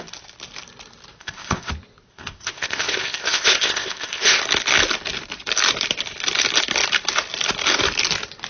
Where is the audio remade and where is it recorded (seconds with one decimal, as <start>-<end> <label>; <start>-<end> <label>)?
0.0-1.2 recorded; 1.2-1.7 remade; 1.7-2.1 recorded; 2.1-4.4 remade; 4.4-8.5 recorded